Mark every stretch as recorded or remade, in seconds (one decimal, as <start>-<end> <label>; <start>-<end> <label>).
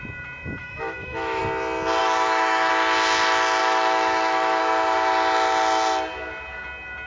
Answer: 0.0-0.6 recorded; 0.6-1.4 remade; 1.4-2.0 recorded; 2.0-2.7 remade; 2.7-3.6 recorded; 3.6-4.6 remade; 4.6-7.1 recorded